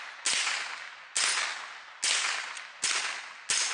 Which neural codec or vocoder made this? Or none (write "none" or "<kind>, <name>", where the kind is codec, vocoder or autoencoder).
none